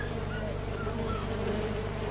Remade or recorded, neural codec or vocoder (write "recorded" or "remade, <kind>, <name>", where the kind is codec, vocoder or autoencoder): recorded